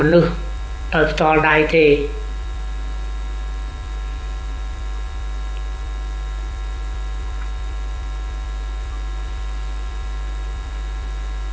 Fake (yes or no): yes